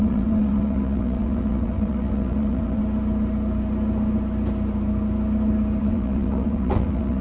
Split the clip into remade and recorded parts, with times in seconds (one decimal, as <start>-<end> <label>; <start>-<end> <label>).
0.0-2.8 remade; 2.8-5.8 recorded; 5.8-7.2 remade